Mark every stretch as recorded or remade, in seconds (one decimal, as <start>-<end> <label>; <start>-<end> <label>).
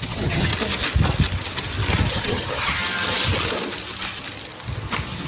0.0-0.5 remade; 0.5-2.1 recorded; 2.1-2.8 remade; 2.8-5.3 recorded